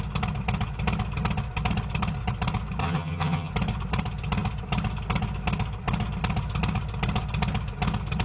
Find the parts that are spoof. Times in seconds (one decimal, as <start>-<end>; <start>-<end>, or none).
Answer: 2.8-3.5